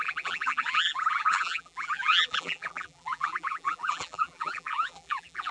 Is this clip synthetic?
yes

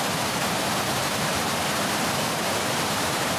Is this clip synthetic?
yes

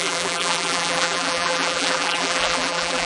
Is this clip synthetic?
yes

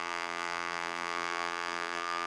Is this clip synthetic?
yes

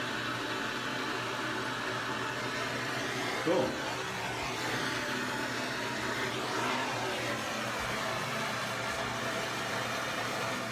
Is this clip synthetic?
no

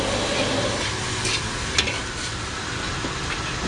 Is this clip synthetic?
no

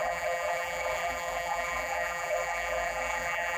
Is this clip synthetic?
yes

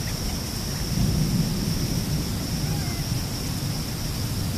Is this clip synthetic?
no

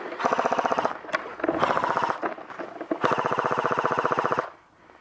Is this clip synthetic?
no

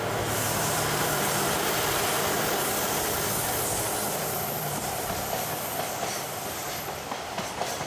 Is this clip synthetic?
yes